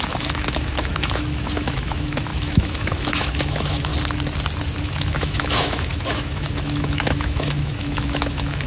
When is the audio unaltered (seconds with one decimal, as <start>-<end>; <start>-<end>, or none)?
3.9-4.8

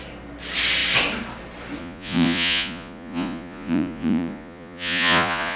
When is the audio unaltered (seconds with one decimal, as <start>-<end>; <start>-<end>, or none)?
0.0-1.8

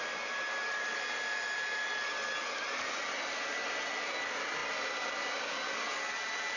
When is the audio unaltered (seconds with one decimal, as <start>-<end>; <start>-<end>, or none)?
0.0-6.6